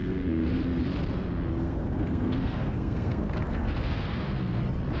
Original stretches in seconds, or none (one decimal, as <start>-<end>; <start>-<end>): 0.6-1.6; 4.6-5.0